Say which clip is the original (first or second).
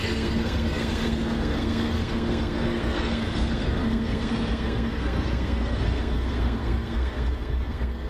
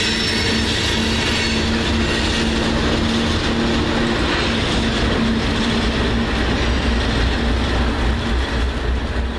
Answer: second